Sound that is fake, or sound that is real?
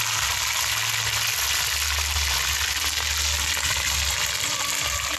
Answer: real